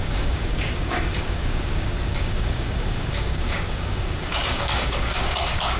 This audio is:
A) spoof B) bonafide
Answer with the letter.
A